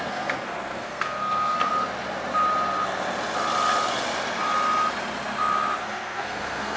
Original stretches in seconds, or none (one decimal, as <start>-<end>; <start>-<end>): 1.7-5.8